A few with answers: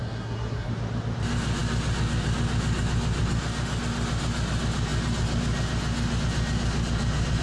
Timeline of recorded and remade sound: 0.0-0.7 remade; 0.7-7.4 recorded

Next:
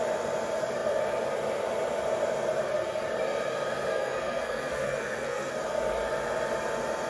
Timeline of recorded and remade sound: 0.0-3.9 recorded; 3.9-5.5 remade; 5.5-7.1 recorded

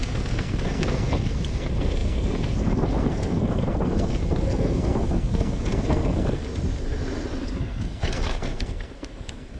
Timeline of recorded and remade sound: 0.0-6.4 remade; 6.4-7.6 recorded; 7.6-9.6 remade

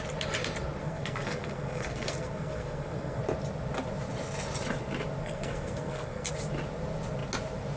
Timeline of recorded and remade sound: 0.0-0.8 recorded; 0.8-3.2 remade; 3.2-5.2 recorded; 5.2-6.3 remade; 6.3-7.8 recorded

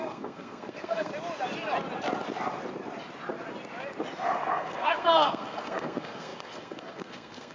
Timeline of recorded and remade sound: 0.0-1.1 remade; 1.1-4.5 recorded; 4.5-7.5 remade

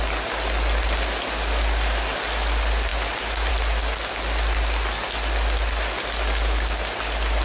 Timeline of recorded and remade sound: 0.0-7.4 recorded

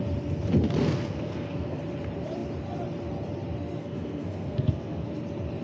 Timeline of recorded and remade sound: 0.0-0.8 recorded; 0.8-1.8 remade; 1.8-3.8 recorded; 3.8-5.1 remade; 5.1-5.6 recorded

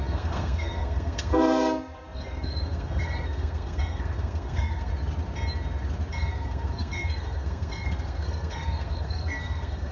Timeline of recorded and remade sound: 0.0-4.9 remade; 4.9-6.1 recorded; 6.1-9.9 remade